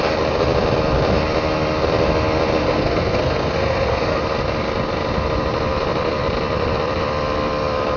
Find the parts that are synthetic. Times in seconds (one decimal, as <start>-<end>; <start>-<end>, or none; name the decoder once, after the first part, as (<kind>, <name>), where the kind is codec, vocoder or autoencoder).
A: 2.6-4.2 (codec, SNAC)